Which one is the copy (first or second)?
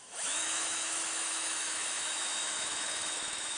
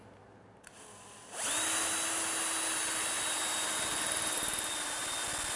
first